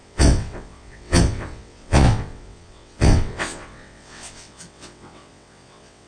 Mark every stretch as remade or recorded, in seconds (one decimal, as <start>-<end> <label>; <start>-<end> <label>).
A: 0.0-6.1 remade